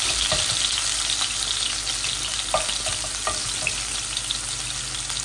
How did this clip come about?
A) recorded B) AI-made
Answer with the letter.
A